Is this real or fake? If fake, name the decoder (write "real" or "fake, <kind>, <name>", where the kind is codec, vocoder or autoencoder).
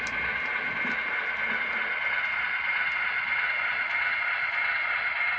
real